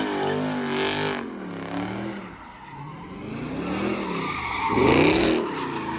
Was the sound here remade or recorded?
recorded